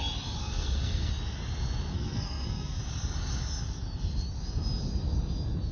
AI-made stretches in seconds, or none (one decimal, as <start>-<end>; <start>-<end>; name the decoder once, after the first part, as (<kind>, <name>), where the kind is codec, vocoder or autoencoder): 0.4-1.1 (codec, SNAC); 1.9-2.8